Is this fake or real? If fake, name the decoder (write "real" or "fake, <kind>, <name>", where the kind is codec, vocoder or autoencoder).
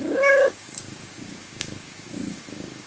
fake, codec, DAC